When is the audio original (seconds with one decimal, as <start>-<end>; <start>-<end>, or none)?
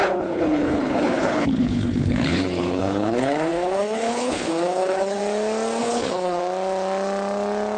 5.2-5.8; 6.4-7.8